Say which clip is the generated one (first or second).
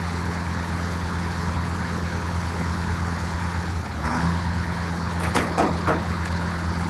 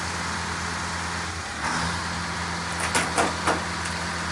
first